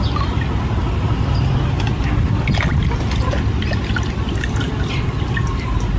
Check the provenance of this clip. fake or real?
real